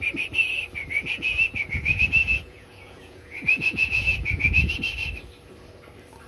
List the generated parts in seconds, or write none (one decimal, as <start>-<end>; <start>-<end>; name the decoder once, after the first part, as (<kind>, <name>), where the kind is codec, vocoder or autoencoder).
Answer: 1.0-4.8 (vocoder, Vocos)